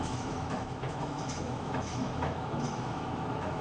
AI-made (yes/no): yes